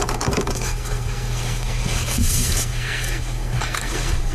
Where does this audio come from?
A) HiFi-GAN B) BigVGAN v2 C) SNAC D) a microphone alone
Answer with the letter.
C